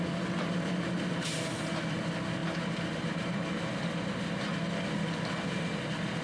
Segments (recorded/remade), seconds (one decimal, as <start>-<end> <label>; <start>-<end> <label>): 0.0-6.2 recorded